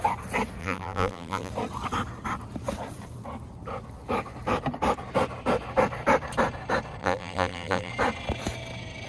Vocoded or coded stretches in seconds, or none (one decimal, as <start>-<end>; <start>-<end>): 0.6-1.5; 7.0-7.9